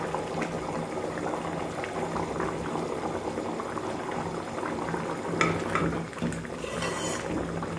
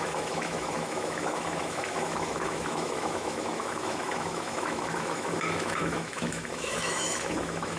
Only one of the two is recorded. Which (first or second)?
first